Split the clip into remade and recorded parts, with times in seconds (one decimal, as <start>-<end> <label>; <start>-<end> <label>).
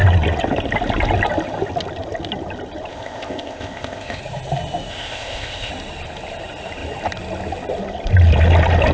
0.0-2.9 recorded; 2.9-4.2 remade; 4.2-4.9 recorded; 4.9-5.7 remade; 5.7-8.9 recorded